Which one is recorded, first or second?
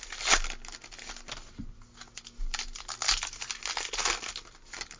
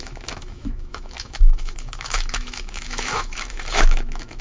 first